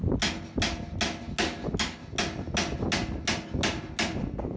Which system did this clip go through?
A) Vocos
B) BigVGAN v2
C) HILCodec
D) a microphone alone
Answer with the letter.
D